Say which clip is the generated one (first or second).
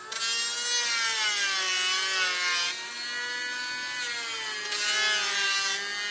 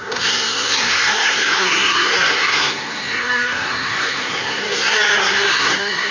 second